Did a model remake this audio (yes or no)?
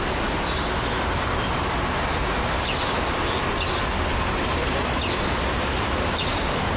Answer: no